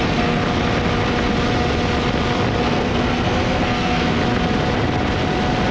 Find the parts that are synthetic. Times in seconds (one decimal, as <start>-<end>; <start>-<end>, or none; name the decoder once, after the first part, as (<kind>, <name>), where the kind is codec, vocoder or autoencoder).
0.0-0.4 (codec, SNAC); 2.6-4.2